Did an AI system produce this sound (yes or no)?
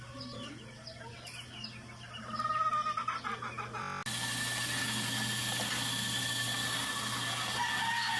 no